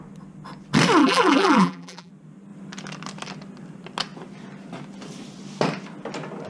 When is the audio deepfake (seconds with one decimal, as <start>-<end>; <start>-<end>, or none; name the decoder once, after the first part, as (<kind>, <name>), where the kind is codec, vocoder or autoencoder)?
1.0-2.1 (vocoder, BigVGAN v2)